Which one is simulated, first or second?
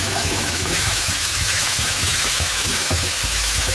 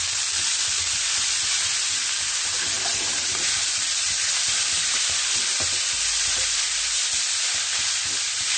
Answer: first